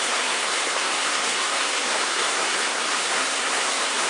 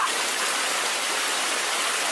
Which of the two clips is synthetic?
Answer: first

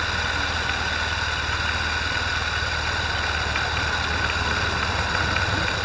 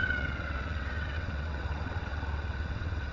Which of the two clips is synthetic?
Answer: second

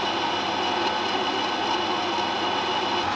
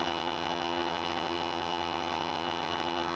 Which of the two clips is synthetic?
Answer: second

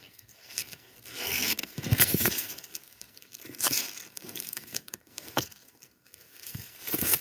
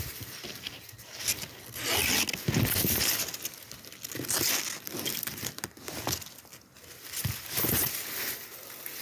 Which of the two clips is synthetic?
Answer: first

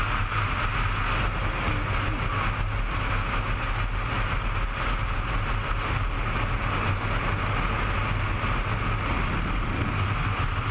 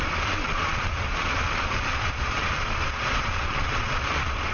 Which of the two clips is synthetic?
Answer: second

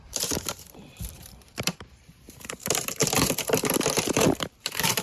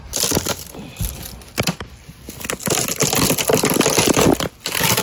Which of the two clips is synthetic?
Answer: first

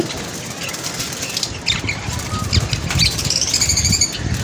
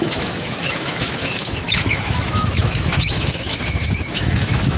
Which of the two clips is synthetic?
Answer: second